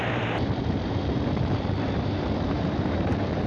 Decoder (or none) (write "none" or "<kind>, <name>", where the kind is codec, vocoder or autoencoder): vocoder, BigVGAN v2